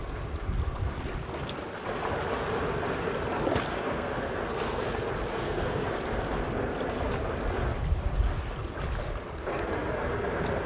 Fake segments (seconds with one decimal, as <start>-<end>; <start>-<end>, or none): 3.7-4.8; 5.3-5.9

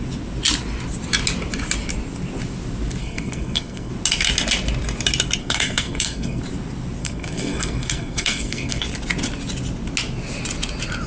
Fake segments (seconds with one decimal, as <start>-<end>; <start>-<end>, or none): 3.0-3.9; 5.4-6.4; 7.0-8.8